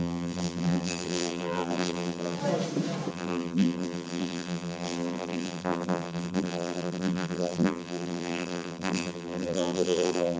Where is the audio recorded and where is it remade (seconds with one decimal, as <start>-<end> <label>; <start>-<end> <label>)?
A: 0.0-2.4 remade; 2.4-3.1 recorded; 3.1-10.4 remade